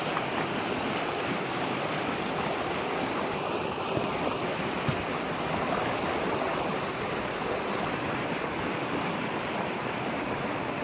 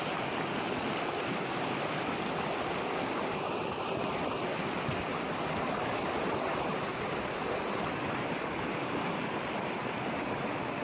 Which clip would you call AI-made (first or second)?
first